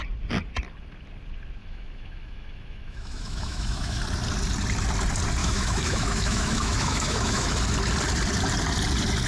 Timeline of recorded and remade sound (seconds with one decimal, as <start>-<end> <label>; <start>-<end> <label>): 0.0-1.6 recorded; 1.6-4.0 remade; 4.0-5.4 recorded; 5.4-7.6 remade; 7.6-9.3 recorded

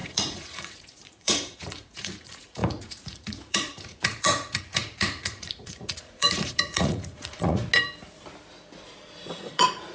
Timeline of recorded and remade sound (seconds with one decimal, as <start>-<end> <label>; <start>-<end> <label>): 0.0-7.6 remade; 7.6-9.3 recorded; 9.3-9.9 remade

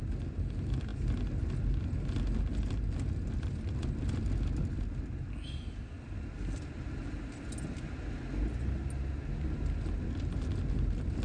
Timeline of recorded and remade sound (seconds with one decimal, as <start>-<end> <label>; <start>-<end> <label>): 0.0-11.2 recorded